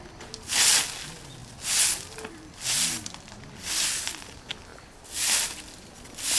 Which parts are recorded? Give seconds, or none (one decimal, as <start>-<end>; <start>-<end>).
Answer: 0.0-6.4